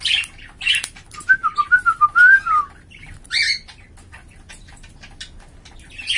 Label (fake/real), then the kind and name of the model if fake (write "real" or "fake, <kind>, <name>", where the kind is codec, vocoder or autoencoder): real